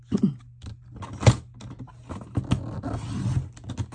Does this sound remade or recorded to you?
recorded